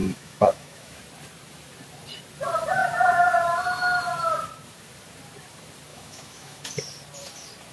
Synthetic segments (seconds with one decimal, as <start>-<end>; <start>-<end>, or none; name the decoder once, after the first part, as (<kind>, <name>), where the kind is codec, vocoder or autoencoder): 0.0-1.0 (autoencoder, DAC-VAE); 5.9-6.7